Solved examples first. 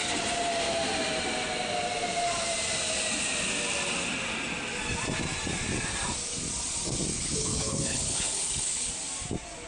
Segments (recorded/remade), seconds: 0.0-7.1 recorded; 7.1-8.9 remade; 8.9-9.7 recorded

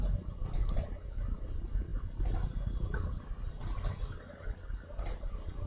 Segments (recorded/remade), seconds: 0.0-5.7 recorded

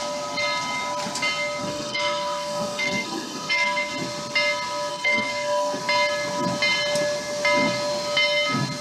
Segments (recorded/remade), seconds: 0.0-1.6 recorded; 1.6-3.9 remade; 3.9-4.9 recorded; 4.9-5.8 remade; 5.8-8.8 recorded

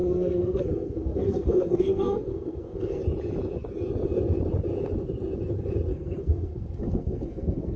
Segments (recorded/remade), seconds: 0.0-3.0 remade; 3.0-5.9 recorded; 5.9-7.8 remade

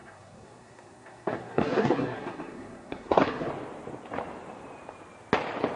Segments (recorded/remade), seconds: 0.0-3.5 remade; 3.5-5.8 recorded